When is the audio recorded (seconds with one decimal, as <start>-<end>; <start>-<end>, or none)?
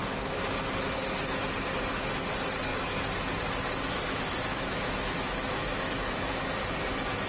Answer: 0.0-4.5; 6.4-7.3